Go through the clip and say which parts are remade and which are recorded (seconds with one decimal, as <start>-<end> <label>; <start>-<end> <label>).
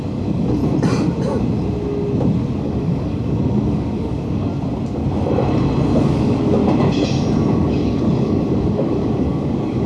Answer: 0.0-0.6 remade; 0.6-2.6 recorded; 2.6-4.5 remade; 4.5-6.0 recorded; 6.0-6.6 remade; 6.6-7.5 recorded; 7.5-9.9 remade